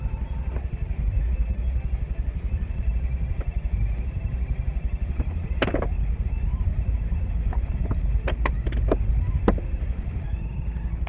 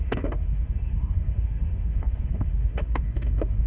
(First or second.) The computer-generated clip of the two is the second